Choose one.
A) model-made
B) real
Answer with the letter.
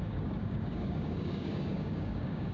A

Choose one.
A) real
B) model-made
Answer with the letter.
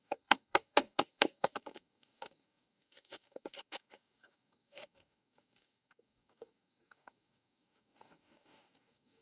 B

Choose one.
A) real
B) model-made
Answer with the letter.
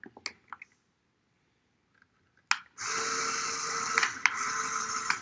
A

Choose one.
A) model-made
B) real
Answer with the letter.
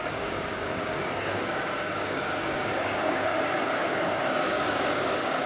A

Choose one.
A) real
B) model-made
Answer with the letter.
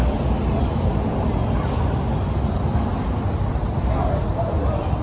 A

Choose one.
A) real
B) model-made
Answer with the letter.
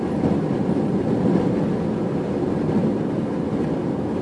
A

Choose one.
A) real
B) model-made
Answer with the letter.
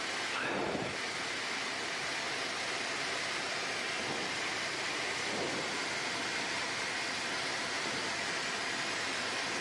A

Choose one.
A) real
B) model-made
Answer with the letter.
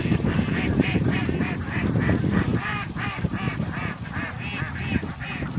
A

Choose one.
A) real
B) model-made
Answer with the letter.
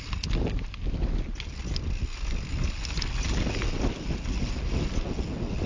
A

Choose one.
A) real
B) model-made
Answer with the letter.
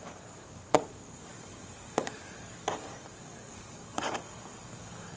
B